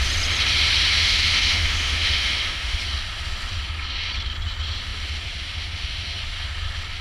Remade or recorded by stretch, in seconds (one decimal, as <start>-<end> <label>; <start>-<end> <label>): 0.0-1.0 recorded; 1.0-2.8 remade; 2.8-7.0 recorded